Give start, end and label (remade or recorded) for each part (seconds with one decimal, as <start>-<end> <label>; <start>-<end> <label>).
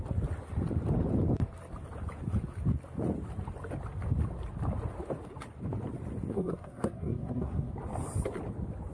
0.0-6.3 recorded; 6.3-7.7 remade; 7.7-8.9 recorded